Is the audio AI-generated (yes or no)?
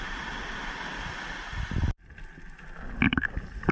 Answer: no